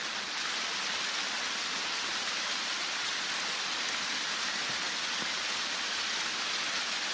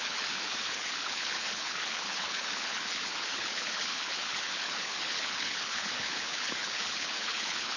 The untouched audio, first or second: first